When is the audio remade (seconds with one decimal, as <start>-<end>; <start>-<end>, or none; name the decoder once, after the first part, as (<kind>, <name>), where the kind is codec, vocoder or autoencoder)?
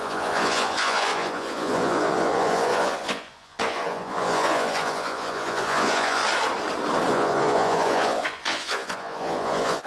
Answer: 0.0-6.2 (vocoder, Vocos); 7.1-9.9